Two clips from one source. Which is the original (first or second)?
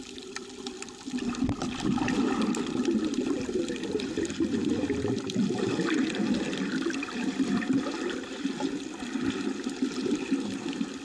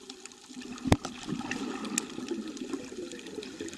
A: second